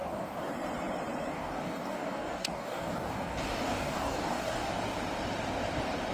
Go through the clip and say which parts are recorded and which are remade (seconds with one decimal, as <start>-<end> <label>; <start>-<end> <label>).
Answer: 0.0-0.5 remade; 0.5-1.3 recorded; 1.3-4.7 remade; 4.7-6.1 recorded